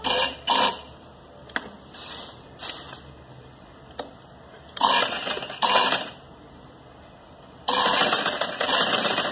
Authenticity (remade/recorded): recorded